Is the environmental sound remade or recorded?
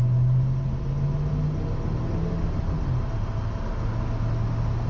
recorded